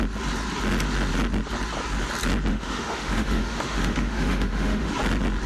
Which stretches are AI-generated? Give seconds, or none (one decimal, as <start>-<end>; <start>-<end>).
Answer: 2.5-4.9